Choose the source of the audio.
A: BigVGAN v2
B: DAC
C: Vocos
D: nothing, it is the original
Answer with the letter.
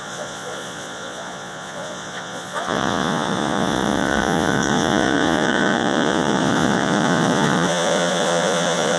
C